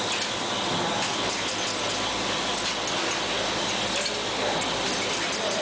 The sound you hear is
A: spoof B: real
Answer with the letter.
B